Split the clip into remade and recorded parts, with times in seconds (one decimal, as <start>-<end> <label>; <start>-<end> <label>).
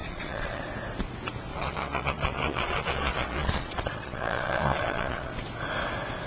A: 0.0-0.6 remade; 0.6-1.5 recorded; 1.5-5.3 remade; 5.3-6.3 recorded